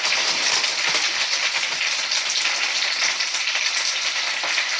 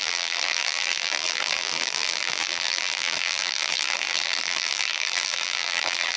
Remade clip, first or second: second